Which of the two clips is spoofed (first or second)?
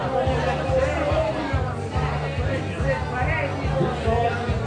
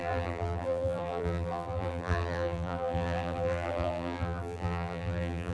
second